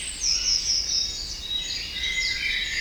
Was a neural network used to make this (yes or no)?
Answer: no